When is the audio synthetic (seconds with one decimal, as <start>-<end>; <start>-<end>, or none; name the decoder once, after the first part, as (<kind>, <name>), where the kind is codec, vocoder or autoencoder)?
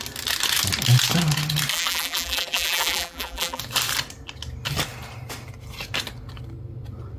1.7-3.6 (vocoder, BigVGAN v2)